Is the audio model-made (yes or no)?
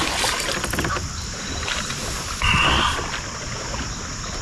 no